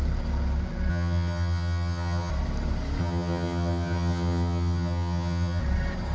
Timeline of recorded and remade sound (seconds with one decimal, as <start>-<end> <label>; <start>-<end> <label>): 0.0-0.9 recorded; 0.9-2.3 remade; 2.3-3.0 recorded; 3.0-5.6 remade; 5.6-6.1 recorded